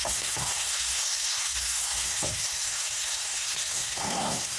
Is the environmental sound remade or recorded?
remade